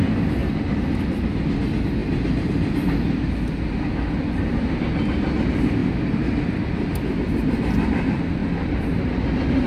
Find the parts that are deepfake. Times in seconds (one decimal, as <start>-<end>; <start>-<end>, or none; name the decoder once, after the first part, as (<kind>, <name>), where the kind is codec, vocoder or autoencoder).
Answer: none

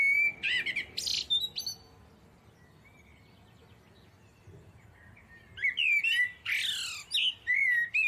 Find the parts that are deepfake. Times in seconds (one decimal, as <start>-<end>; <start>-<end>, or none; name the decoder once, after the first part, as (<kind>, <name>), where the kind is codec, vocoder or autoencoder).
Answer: none

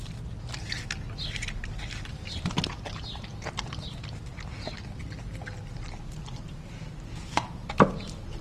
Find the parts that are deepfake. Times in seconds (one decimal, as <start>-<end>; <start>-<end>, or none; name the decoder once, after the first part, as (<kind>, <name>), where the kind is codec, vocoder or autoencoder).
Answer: none

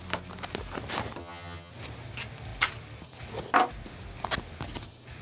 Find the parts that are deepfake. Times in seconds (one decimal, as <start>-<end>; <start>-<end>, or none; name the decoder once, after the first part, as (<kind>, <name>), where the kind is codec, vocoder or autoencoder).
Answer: 1.2-1.7 (vocoder, HiFi-GAN)

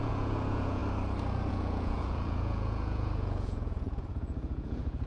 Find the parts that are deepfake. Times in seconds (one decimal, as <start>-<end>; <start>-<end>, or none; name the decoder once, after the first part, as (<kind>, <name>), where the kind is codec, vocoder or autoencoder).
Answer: 0.0-0.8 (vocoder, Vocos); 1.5-5.1

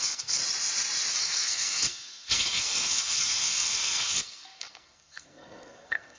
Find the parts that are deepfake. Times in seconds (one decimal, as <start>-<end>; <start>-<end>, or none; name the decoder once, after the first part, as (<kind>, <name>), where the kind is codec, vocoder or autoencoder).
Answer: 0.0-0.4 (codec, SNAC); 1.1-6.2

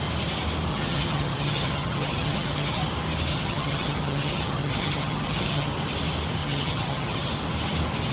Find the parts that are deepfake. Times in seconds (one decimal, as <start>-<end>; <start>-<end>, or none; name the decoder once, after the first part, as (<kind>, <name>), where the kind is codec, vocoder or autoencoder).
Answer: 0.7-2.8 (vocoder, HiFi-GAN); 3.3-5.7; 6.4-7.3